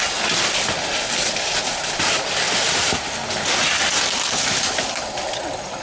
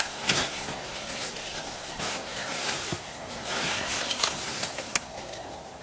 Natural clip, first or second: first